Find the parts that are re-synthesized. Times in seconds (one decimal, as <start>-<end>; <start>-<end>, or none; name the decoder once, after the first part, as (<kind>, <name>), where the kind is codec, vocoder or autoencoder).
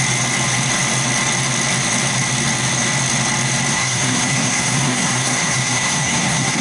3.7-6.6 (codec, SNAC)